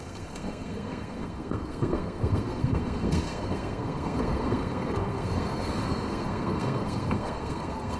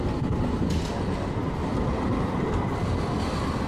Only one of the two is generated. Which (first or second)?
first